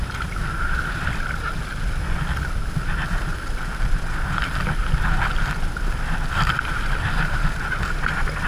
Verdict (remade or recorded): remade